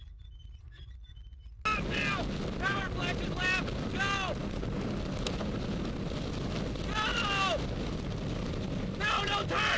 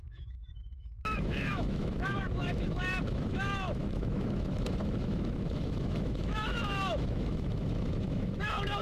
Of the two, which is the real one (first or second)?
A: first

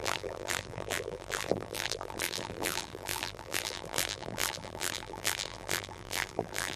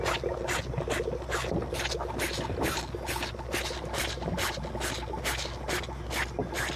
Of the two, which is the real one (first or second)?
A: second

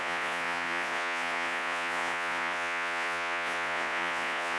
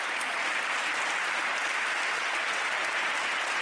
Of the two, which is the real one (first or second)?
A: second